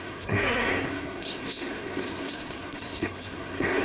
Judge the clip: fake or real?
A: fake